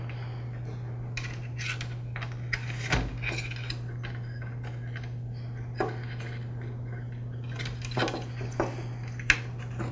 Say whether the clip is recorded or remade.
recorded